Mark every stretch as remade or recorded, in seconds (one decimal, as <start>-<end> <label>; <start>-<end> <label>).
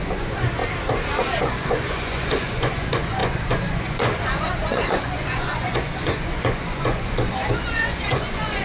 0.0-0.6 remade; 0.6-1.4 recorded; 1.4-8.6 remade